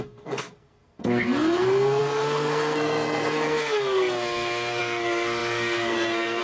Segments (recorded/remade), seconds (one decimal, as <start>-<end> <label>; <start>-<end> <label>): 0.0-6.4 remade